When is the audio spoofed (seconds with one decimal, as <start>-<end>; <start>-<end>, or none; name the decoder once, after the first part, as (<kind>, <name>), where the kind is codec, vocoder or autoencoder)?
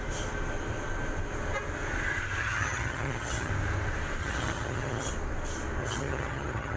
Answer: 2.4-3.5 (vocoder, HiFi-GAN); 4.2-5.1; 5.8-6.8